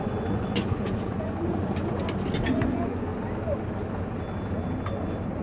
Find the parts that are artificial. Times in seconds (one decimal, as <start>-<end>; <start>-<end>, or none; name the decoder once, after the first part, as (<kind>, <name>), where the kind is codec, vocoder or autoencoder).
0.0-1.6 (vocoder, Vocos); 2.5-3.1